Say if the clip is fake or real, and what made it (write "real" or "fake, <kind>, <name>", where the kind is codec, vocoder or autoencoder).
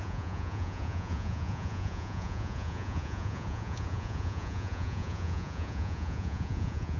fake, vocoder, Vocos